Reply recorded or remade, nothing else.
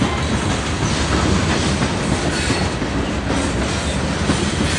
recorded